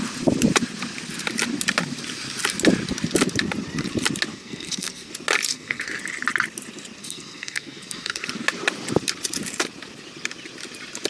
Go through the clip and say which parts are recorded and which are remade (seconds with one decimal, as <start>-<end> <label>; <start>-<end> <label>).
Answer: 0.0-4.3 recorded; 4.3-5.1 remade; 5.1-5.5 recorded; 5.5-6.0 remade; 6.0-7.0 recorded; 7.0-8.2 remade; 8.2-11.1 recorded